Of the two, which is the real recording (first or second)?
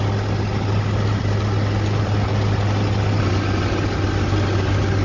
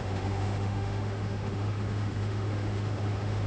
first